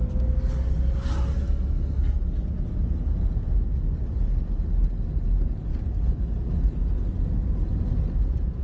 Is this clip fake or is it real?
real